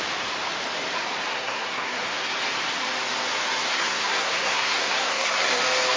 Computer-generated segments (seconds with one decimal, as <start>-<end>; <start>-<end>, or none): 1.3-2.3; 3.7-5.6